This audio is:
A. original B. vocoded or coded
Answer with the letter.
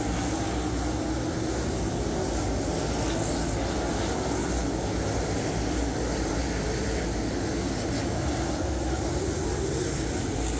A